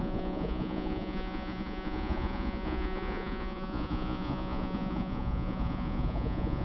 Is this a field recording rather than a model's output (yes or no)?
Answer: no